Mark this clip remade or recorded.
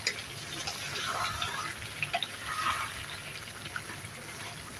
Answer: recorded